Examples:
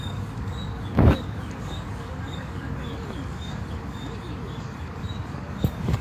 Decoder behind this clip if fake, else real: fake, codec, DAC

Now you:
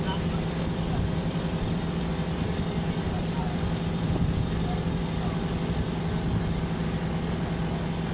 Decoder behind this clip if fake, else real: real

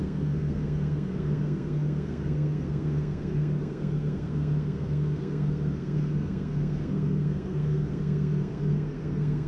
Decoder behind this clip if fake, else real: fake, codec, SNAC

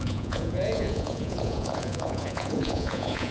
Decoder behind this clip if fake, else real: fake, vocoder, Vocos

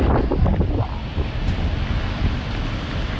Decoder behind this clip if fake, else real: real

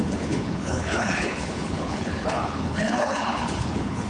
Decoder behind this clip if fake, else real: fake, codec, HILCodec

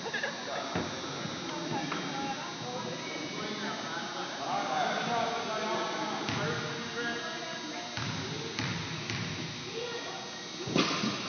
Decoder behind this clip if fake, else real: real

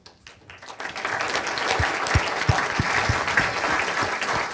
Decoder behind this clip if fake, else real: real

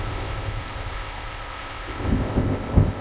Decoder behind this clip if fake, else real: fake, codec, ZipCodec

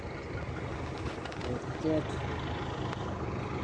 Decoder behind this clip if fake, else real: real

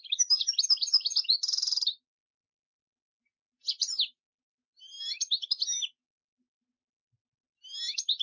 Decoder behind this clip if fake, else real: real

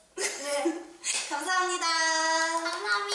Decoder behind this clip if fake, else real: real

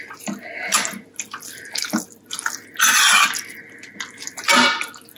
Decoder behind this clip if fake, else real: real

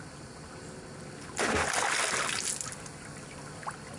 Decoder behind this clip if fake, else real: real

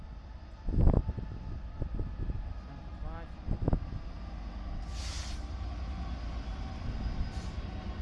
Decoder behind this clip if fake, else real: real